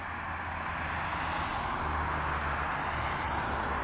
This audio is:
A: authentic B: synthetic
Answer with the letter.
A